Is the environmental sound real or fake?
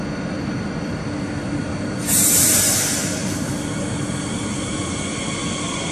real